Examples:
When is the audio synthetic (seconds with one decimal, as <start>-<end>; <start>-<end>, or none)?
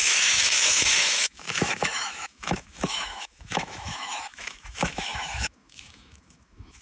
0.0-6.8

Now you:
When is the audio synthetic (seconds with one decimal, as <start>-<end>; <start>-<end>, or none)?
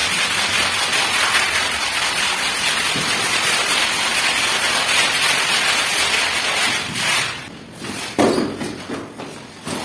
none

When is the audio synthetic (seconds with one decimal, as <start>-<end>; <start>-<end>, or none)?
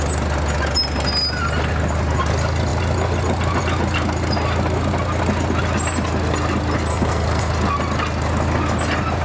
6.9-7.5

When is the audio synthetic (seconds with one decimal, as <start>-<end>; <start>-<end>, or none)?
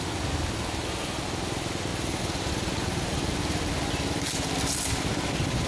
none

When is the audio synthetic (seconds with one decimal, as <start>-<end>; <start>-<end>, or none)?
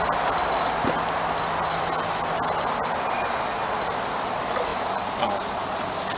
none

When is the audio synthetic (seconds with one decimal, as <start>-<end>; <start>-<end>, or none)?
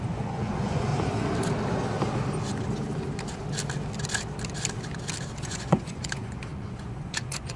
0.0-0.9; 5.4-7.6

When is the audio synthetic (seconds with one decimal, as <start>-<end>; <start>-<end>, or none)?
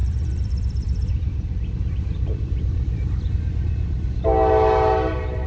0.0-3.3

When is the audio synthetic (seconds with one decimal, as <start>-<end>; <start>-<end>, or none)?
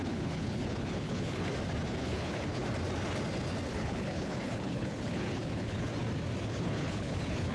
0.0-1.5; 2.0-2.6; 3.7-5.9; 6.4-7.5